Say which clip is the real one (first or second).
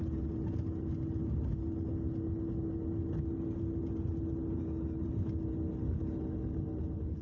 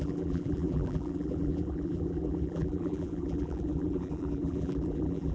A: first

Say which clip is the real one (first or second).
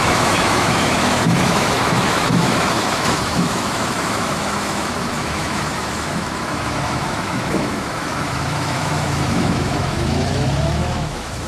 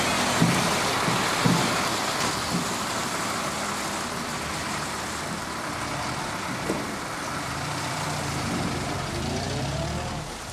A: second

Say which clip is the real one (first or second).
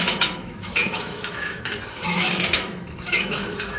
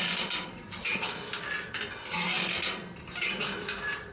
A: second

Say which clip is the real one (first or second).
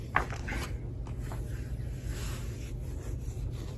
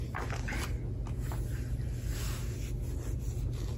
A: second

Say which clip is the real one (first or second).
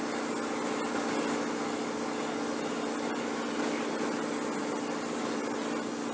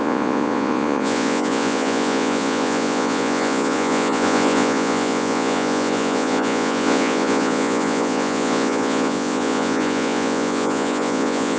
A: first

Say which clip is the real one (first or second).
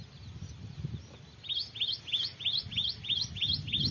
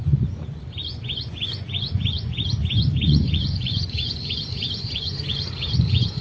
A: first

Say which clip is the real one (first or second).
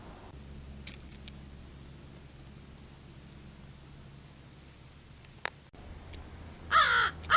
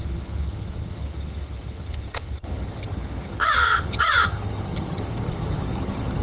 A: first